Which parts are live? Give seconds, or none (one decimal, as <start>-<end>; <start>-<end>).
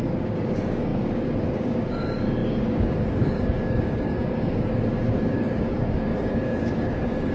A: none